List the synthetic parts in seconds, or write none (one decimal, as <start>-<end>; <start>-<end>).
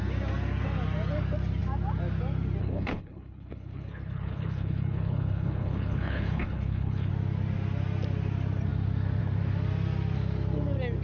2.6-7.1